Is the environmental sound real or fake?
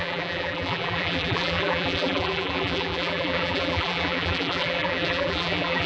fake